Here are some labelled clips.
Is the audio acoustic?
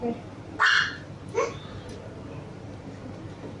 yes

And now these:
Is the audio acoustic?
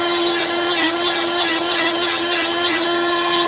no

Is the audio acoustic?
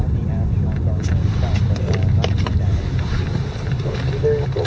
yes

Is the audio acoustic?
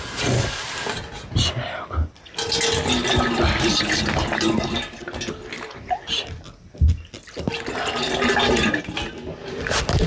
yes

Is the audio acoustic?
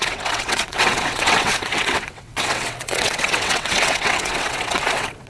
no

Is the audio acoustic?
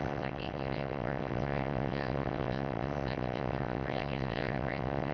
no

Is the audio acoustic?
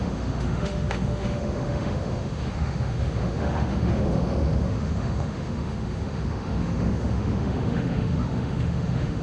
no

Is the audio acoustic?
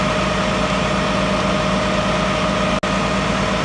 yes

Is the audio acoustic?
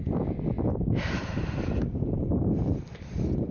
yes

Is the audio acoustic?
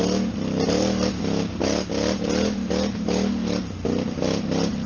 yes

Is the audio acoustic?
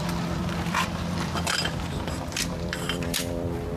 no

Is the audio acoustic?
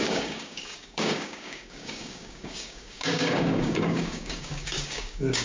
no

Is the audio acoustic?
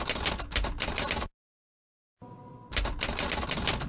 yes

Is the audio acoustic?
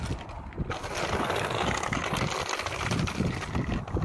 yes